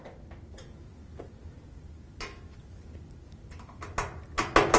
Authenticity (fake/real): real